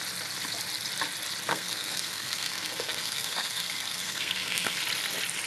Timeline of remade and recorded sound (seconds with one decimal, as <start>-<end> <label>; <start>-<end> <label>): 0.0-1.5 recorded; 1.5-4.8 remade; 4.8-5.5 recorded